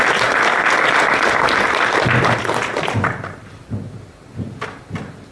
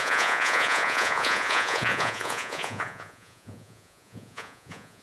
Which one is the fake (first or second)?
second